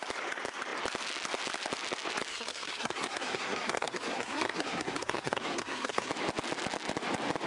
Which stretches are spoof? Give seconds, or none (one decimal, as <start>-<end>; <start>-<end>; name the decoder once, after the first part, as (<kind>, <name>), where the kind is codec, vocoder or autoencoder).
2.3-6.1 (codec, SNAC)